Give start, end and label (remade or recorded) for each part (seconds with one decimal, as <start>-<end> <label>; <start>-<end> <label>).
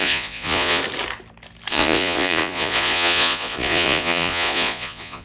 0.0-0.8 remade; 0.8-1.7 recorded; 1.7-5.2 remade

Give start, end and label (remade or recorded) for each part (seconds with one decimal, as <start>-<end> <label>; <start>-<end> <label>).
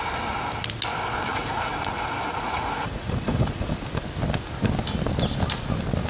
0.0-1.3 recorded; 1.3-3.8 remade; 3.8-6.1 recorded